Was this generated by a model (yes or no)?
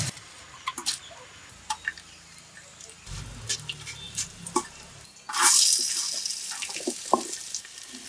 no